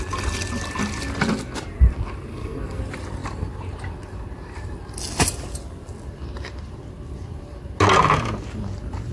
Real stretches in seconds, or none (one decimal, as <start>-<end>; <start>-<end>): 0.0-2.3; 2.8-9.1